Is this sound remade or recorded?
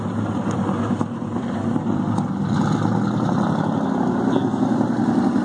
recorded